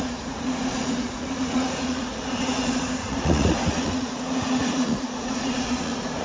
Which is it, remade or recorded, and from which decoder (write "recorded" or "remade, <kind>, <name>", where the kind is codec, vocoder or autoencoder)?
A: remade, vocoder, Vocos